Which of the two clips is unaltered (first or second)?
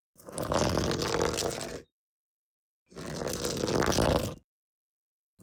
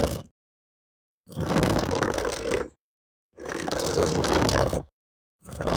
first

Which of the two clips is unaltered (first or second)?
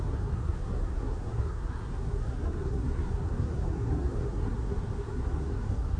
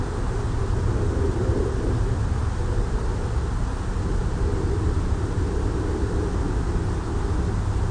second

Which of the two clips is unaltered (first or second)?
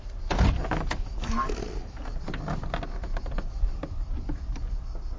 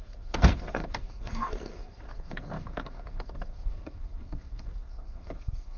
first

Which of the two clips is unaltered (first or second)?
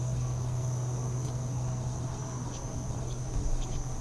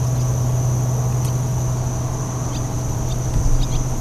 second